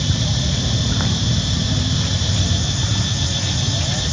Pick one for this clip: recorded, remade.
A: recorded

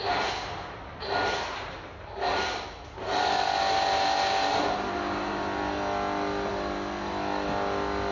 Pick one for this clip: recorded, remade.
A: recorded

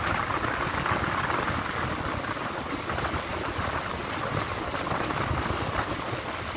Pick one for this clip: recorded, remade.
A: recorded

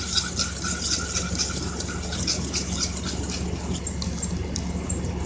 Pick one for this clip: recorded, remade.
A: recorded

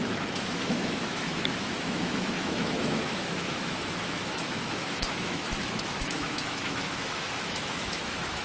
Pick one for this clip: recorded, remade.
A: remade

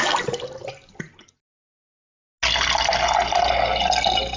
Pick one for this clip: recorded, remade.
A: recorded